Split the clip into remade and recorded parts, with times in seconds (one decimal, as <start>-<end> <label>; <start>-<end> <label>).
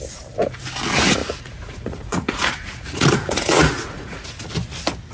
0.0-1.2 recorded; 1.2-4.3 remade; 4.3-5.1 recorded